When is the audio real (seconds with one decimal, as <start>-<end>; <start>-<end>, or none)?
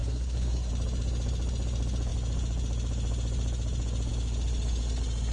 0.7-5.3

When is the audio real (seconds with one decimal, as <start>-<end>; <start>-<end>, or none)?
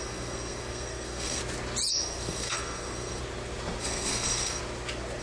1.4-1.9; 3.2-3.8; 4.6-5.2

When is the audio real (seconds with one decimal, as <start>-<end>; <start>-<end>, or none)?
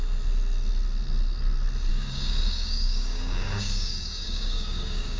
0.0-1.9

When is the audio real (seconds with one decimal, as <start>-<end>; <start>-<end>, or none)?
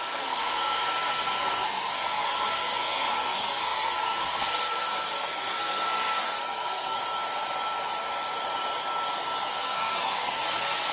7.0-9.5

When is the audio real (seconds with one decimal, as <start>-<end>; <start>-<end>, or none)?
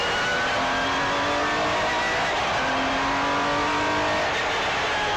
0.0-5.2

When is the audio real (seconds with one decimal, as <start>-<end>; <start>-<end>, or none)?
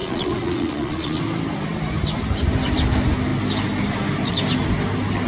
1.2-5.3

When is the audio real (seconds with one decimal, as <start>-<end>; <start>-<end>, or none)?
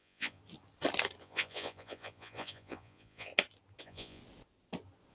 0.4-1.2; 3.3-3.8; 4.2-5.1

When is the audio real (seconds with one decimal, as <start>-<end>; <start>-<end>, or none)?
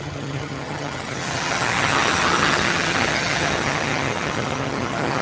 none